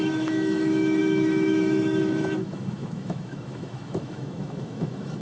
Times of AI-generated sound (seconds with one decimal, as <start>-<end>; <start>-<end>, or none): 0.0-5.2